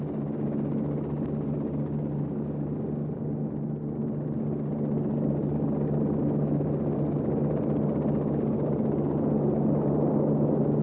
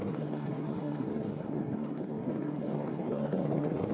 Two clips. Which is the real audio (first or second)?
first